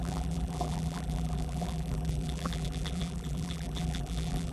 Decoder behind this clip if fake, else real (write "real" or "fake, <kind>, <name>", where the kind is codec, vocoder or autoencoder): fake, vocoder, BigVGAN v2